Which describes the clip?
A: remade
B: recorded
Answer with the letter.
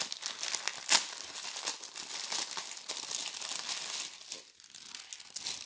B